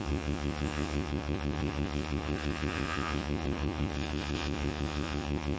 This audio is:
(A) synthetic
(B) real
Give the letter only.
A